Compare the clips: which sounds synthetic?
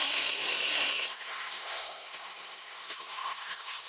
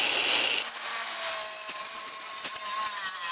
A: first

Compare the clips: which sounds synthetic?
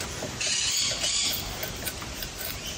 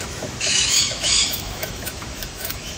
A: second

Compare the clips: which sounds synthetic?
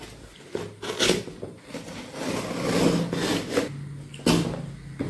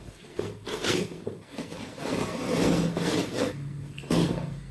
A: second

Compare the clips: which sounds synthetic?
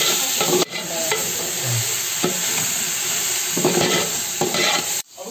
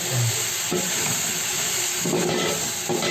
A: first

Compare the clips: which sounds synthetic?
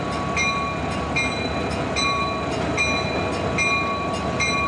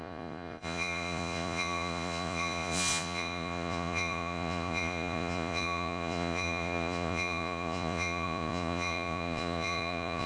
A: second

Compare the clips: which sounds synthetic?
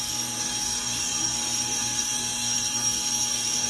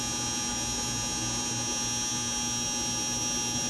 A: first